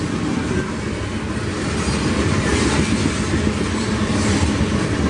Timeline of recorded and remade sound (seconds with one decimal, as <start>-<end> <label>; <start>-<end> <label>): 0.0-5.1 recorded